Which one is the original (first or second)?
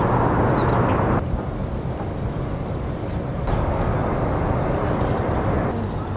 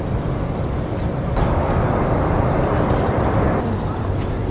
first